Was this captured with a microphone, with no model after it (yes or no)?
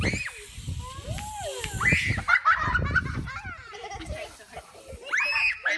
yes